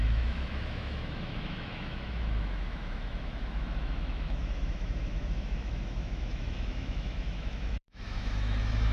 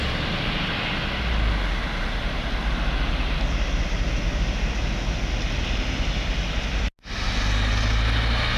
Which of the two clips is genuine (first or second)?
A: second